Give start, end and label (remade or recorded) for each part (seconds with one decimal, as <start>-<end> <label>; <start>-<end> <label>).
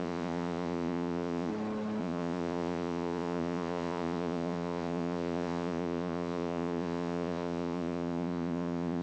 0.0-1.5 remade; 1.5-2.0 recorded; 2.0-9.0 remade